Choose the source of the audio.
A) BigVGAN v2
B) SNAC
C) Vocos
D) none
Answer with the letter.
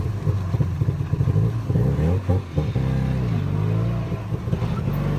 D